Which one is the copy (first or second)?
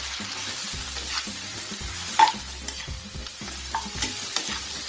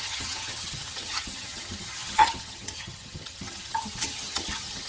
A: second